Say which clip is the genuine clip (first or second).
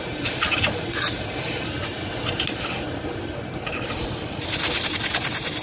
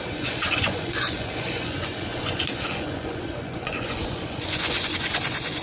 first